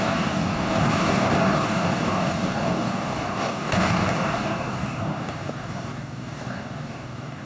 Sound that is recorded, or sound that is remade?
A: remade